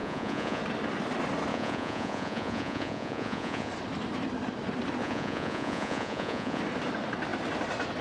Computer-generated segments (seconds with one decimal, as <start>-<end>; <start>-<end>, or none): 0.0-0.6; 1.5-3.7; 5.0-6.6